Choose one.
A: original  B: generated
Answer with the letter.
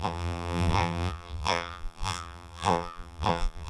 B